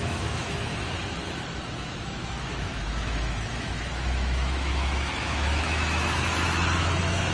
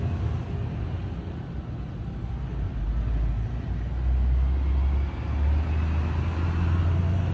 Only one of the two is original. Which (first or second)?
second